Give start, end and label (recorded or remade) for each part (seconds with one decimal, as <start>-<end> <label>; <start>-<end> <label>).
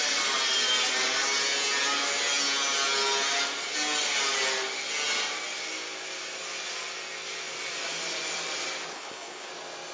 0.0-8.9 recorded; 8.9-9.5 remade; 9.5-9.9 recorded